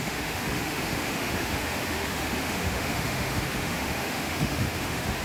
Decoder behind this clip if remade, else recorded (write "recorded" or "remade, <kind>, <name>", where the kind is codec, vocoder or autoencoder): remade, autoencoder, DAC-VAE